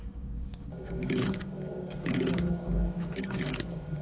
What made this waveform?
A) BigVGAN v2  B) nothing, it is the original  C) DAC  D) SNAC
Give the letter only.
C